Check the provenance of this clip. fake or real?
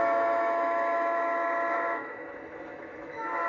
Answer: fake